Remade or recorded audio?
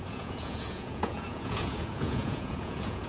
remade